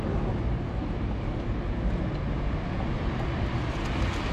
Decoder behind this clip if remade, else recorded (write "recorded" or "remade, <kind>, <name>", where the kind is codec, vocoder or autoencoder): recorded